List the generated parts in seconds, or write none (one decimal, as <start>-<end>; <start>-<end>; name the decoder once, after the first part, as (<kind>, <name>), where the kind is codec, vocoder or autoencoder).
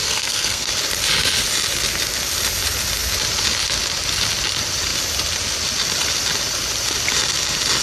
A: 0.0-0.7 (codec, SNAC)